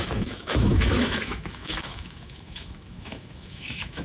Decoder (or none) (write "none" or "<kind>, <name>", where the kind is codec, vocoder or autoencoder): autoencoder, DAC-VAE